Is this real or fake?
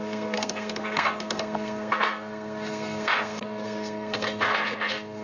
fake